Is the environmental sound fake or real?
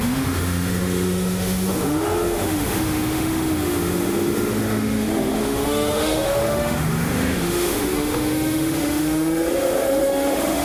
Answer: fake